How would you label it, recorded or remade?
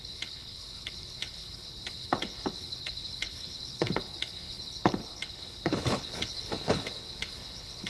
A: remade